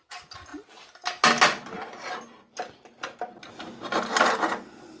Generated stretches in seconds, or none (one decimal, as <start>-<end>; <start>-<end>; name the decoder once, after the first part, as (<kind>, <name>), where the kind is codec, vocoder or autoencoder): none